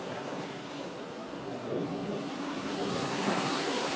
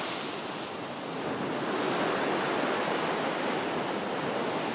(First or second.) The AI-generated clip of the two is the first